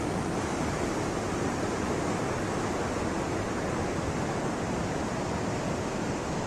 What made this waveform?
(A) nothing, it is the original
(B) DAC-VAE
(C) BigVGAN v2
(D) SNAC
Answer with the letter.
A